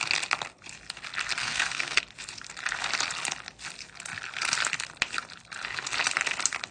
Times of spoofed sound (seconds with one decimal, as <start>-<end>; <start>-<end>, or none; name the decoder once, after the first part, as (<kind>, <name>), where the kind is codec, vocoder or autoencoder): 1.4-2.0 (codec, SNAC)